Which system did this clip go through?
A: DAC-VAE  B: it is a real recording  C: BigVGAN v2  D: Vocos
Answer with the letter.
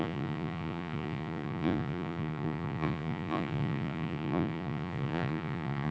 D